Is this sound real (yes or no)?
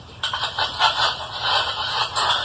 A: no